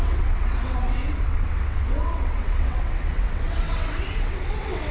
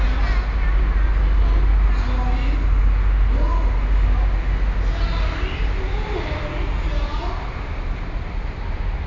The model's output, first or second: first